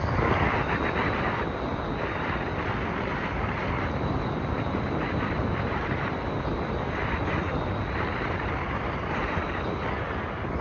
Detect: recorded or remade recorded